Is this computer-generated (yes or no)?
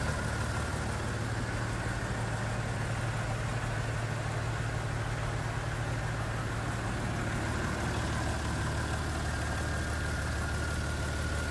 no